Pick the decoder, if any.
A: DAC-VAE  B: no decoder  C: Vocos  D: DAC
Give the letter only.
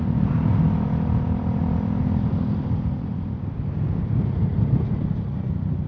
B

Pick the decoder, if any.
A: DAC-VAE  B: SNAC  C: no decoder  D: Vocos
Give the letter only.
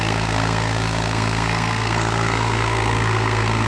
B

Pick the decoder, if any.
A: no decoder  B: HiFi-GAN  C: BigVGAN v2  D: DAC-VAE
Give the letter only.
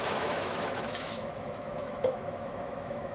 D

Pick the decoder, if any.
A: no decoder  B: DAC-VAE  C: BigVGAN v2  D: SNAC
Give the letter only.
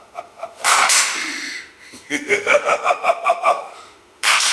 B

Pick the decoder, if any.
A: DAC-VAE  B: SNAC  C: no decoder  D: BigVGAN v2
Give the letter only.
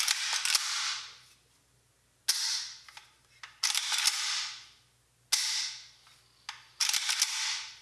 C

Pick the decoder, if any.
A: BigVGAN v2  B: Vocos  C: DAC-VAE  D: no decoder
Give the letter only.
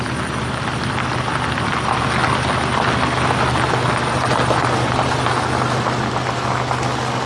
D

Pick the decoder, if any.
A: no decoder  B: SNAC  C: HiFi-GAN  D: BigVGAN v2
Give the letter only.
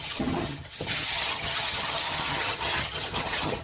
C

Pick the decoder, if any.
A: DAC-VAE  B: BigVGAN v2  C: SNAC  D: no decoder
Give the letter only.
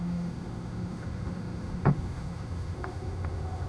A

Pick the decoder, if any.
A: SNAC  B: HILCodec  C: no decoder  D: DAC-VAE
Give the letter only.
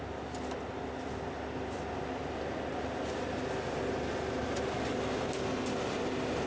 C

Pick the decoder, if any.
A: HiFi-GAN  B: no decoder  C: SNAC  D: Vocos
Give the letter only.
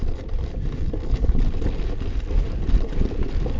B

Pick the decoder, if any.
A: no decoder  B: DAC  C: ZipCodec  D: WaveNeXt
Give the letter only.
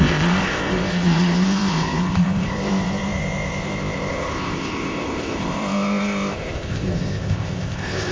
C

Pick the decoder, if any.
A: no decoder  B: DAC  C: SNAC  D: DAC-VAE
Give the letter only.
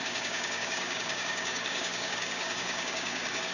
B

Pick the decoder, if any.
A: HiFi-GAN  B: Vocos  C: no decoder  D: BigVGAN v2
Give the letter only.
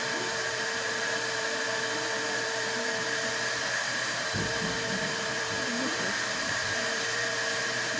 D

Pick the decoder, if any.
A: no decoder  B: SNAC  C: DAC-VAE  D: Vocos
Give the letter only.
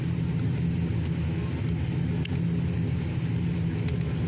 A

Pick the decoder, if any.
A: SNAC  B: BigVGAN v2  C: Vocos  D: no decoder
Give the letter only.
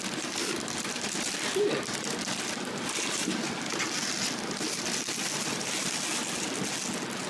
D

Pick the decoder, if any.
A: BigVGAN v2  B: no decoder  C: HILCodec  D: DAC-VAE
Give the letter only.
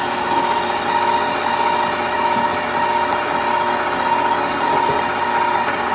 B